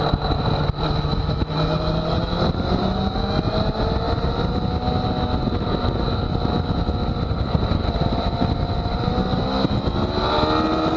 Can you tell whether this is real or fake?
real